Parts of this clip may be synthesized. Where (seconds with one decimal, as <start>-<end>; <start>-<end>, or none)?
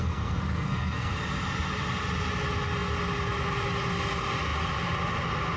0.0-1.1